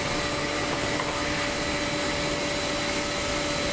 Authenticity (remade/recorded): recorded